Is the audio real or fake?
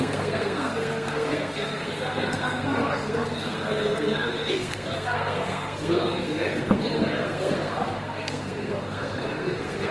fake